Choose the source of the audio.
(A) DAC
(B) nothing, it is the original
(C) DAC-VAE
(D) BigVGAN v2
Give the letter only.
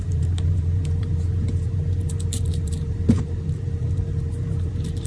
D